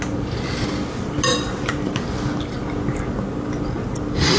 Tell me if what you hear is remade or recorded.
recorded